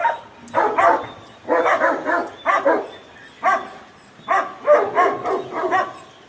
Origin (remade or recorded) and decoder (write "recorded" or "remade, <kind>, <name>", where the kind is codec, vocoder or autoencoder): recorded